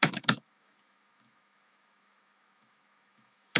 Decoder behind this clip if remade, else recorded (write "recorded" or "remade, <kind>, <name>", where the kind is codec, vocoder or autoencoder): remade, autoencoder, DAC-VAE